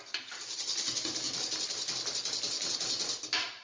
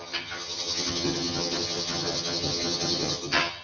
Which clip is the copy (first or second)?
second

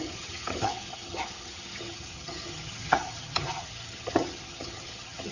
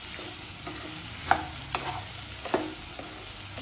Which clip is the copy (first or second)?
first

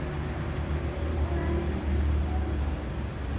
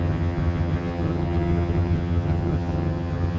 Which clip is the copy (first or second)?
second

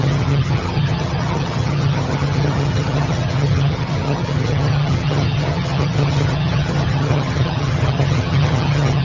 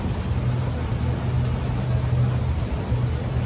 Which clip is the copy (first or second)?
first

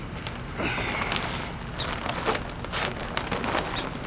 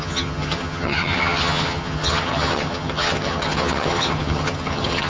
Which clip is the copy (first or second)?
second